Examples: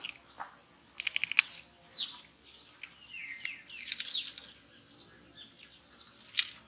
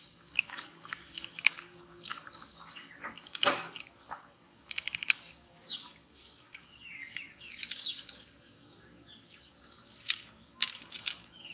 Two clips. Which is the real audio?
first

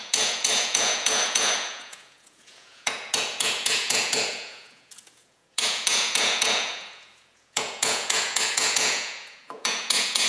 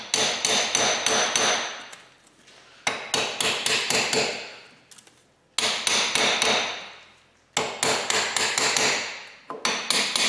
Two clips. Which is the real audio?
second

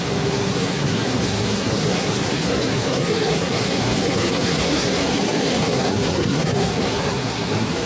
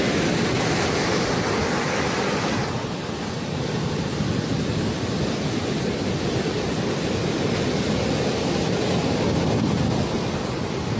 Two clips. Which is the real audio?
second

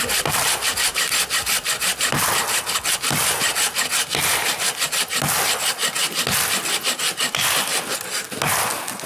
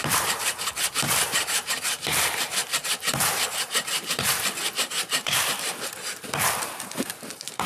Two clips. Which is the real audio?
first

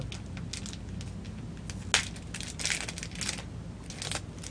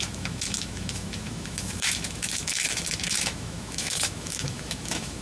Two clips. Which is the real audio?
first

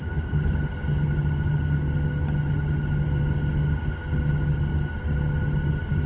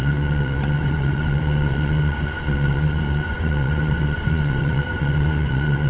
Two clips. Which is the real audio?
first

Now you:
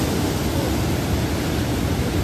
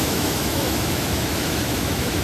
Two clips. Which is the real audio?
first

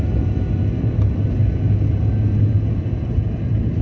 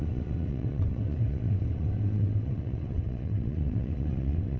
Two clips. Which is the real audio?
first